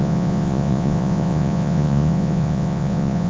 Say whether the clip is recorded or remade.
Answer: remade